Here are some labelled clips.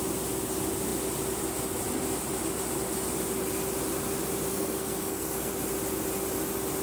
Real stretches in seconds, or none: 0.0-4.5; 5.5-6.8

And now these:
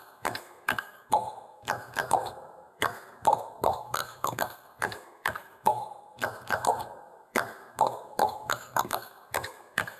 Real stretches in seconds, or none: none

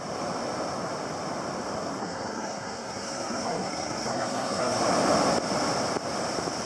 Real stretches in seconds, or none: 0.0-2.0; 4.8-6.7

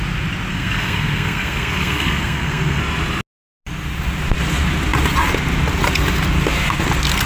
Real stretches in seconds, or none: 0.0-0.5; 2.8-7.3

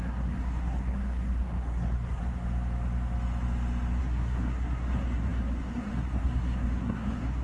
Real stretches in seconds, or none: 2.2-4.0

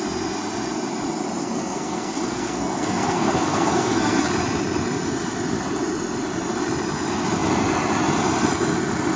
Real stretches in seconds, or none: 0.0-1.4; 4.3-9.2